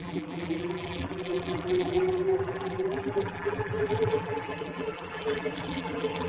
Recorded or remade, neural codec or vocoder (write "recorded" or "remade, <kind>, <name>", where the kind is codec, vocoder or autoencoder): remade, vocoder, BigVGAN v2